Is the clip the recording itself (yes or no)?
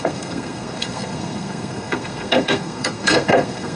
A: no